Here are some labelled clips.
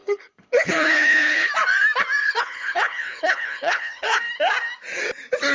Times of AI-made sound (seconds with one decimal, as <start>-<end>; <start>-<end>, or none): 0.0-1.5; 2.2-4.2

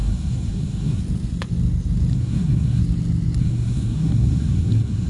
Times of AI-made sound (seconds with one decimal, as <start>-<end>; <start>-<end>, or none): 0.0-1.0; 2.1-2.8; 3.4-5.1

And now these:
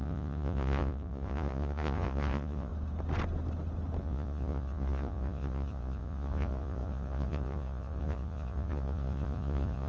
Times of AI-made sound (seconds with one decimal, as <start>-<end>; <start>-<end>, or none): 0.0-2.7; 4.0-9.9

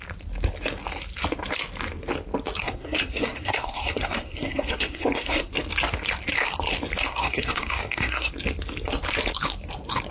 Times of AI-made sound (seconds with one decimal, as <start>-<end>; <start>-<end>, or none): 2.6-5.5; 7.1-8.3

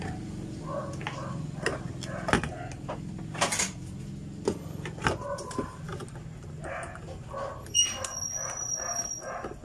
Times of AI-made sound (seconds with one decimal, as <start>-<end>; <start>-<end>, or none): none

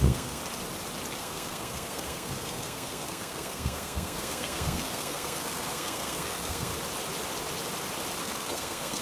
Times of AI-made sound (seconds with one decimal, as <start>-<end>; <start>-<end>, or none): 0.0-0.4; 1.2-6.7; 8.2-9.0

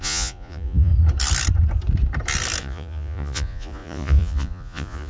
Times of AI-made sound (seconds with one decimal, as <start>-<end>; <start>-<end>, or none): 0.0-0.9; 2.6-5.1

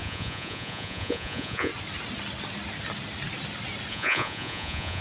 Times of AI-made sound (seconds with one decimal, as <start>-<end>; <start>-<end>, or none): 0.0-1.7; 3.9-5.0